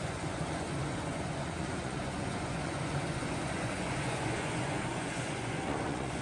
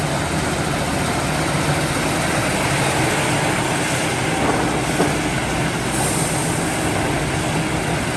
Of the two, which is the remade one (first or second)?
first